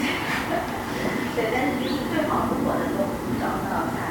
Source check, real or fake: real